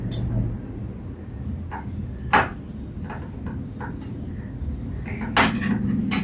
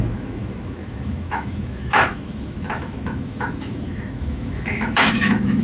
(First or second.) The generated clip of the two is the second